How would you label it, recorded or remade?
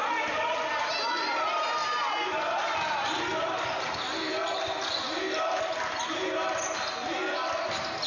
recorded